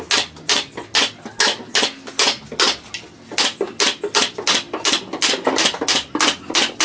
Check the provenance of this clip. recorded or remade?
recorded